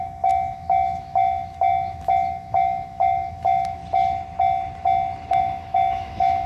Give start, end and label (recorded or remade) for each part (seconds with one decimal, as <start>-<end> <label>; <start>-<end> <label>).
0.0-3.8 remade; 3.8-5.4 recorded; 5.4-6.5 remade